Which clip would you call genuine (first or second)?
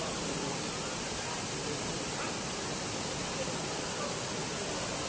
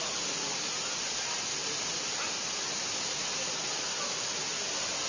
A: second